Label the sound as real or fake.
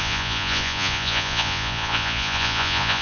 fake